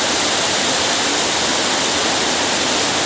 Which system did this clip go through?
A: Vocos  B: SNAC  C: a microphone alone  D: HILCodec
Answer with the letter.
C